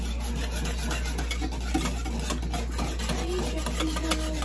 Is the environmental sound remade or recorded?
recorded